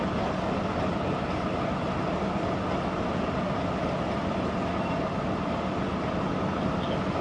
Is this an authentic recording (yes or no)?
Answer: yes